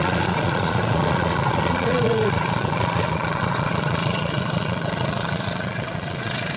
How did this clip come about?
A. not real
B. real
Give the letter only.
A